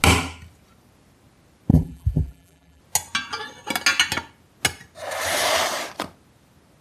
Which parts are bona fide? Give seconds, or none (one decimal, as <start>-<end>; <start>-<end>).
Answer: 0.0-1.7; 2.8-6.8